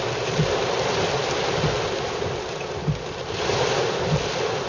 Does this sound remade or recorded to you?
recorded